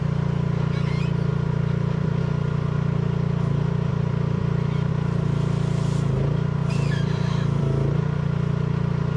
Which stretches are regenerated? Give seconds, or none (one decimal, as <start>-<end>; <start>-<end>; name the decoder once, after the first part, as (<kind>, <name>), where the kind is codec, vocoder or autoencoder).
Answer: 1.3-2.2 (vocoder, BigVGAN v2); 3.9-4.9; 6.6-8.0